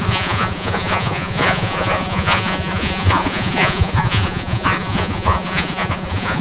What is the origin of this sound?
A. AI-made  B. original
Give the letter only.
A